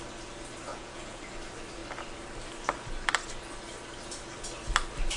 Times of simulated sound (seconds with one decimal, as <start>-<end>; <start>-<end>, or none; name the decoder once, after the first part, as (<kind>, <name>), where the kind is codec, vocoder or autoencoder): 0.7-1.2 (vocoder, Vocos)